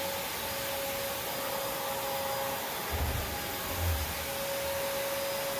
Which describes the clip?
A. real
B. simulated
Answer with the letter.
A